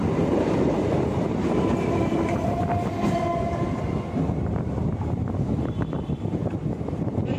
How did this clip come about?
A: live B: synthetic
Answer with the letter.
A